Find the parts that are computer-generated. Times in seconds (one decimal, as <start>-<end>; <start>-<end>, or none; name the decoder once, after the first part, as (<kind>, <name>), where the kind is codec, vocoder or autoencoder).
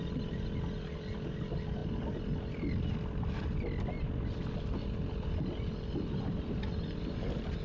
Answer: none